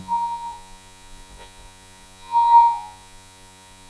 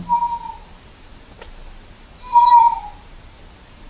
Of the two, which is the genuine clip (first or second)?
second